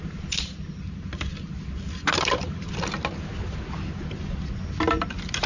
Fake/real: real